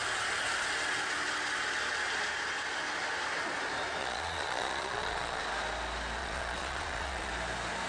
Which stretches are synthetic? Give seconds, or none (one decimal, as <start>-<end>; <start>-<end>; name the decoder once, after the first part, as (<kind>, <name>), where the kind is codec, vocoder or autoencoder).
4.0-5.4 (vocoder, Vocos); 6.2-7.3